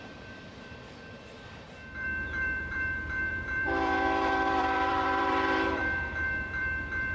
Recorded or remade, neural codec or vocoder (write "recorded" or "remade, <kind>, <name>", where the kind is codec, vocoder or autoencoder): remade, vocoder, BigVGAN v2